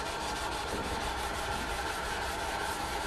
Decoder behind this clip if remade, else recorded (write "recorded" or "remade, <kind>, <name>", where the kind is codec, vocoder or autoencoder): recorded